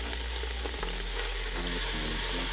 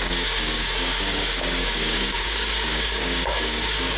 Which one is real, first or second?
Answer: first